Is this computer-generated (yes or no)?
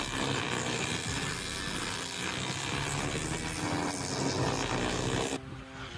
no